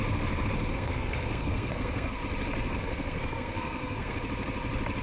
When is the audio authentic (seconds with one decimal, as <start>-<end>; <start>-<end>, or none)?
0.0-0.7; 2.2-2.7; 4.2-5.0